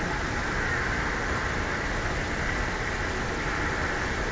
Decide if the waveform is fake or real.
real